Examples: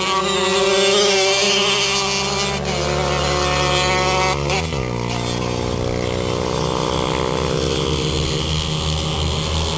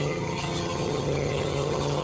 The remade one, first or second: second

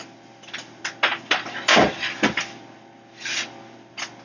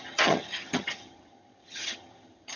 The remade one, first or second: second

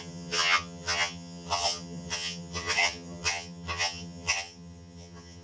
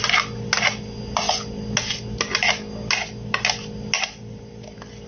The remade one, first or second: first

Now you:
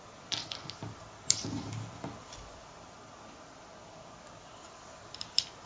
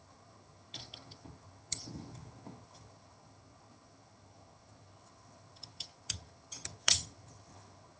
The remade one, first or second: second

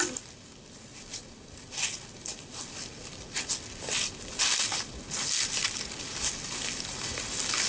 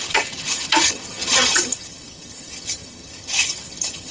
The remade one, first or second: second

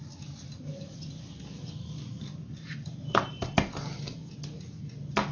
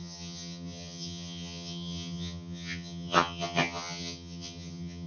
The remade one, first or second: second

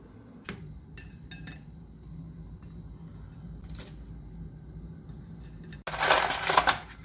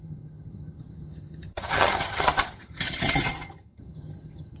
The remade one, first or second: second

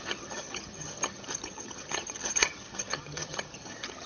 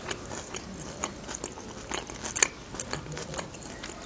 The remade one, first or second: first